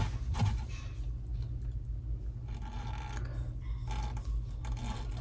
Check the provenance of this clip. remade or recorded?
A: recorded